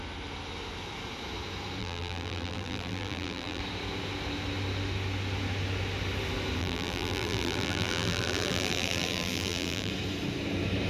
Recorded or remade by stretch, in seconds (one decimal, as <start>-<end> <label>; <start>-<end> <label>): 0.0-1.8 recorded; 1.8-3.6 remade; 3.6-6.6 recorded; 6.6-9.9 remade; 9.9-10.9 recorded